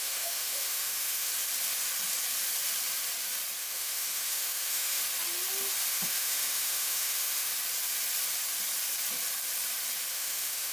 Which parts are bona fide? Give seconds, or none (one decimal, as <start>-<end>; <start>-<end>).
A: 1.3-3.6; 5.0-5.9; 7.5-10.1